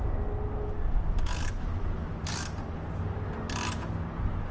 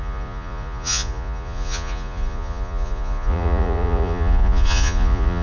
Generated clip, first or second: second